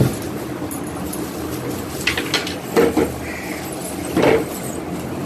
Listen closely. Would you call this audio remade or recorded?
recorded